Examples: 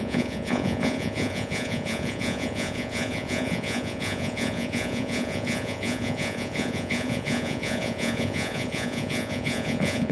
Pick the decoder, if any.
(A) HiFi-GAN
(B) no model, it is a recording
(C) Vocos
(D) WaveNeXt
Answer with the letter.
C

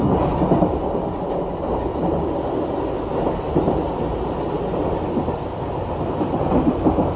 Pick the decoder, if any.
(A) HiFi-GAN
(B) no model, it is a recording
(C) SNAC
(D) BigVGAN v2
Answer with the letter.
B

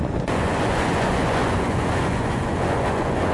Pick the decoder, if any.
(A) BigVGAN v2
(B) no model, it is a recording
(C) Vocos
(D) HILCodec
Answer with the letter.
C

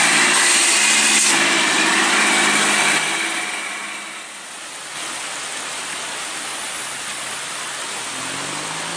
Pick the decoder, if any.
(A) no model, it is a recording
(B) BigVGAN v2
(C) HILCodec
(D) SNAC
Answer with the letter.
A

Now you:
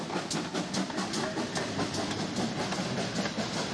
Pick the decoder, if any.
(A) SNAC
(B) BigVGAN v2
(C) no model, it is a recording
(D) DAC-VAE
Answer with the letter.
C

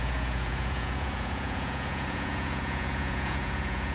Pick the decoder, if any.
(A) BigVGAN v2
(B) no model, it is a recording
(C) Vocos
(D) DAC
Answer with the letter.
C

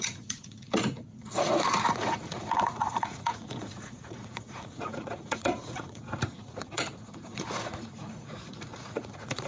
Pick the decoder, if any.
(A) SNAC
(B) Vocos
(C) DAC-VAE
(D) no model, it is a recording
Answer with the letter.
B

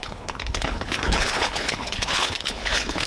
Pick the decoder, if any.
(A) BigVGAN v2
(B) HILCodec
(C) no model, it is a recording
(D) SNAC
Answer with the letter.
B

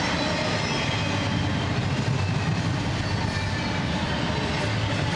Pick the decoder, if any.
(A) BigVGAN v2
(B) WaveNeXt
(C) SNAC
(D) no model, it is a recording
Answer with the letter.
D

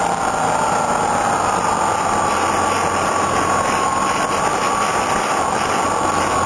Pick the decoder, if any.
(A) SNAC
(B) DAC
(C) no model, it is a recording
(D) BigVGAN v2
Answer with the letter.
C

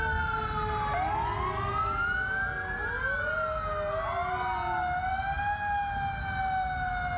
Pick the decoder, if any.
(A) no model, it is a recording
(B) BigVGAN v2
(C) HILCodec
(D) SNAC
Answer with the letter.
A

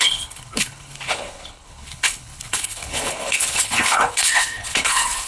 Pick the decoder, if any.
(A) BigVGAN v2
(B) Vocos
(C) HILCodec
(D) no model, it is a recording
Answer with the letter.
C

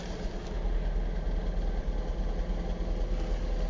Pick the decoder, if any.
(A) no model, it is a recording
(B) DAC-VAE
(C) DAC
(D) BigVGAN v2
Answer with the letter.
A